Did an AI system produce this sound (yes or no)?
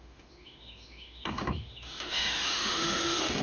yes